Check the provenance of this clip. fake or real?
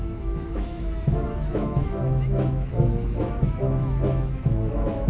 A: fake